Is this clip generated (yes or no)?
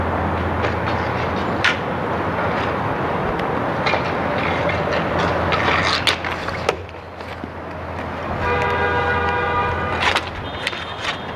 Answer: no